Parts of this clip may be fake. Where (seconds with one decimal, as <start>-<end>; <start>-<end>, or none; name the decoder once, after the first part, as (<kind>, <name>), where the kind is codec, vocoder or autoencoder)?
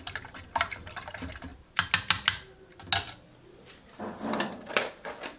0.0-1.5 (vocoder, BigVGAN v2); 4.7-5.4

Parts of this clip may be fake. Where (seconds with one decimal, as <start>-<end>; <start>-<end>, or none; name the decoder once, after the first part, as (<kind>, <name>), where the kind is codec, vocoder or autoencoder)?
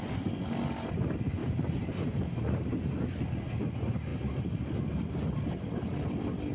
1.4-3.6 (vocoder, BigVGAN v2); 4.1-5.2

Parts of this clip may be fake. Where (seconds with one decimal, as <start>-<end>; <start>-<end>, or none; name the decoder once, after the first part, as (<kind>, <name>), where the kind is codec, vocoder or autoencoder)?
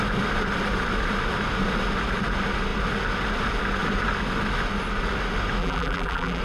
5.6-6.4 (vocoder, BigVGAN v2)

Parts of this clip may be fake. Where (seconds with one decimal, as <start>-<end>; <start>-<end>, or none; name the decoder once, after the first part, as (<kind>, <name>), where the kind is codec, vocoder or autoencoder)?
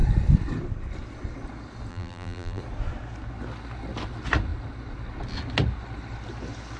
1.9-2.6 (vocoder, BigVGAN v2)